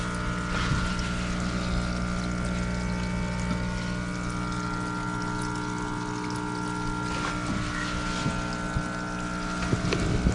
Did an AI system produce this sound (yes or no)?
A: no